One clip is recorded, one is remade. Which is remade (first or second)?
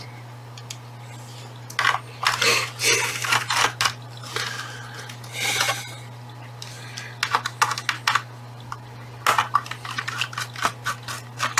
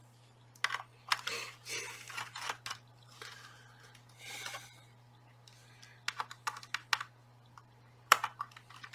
second